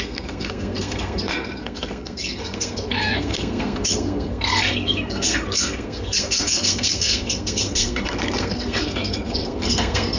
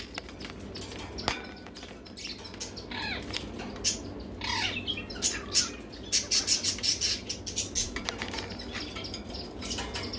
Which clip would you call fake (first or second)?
first